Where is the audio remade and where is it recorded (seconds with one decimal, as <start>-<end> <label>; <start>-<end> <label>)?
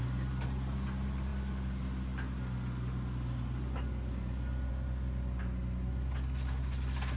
0.0-7.2 recorded